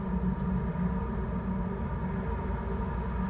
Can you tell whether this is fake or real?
real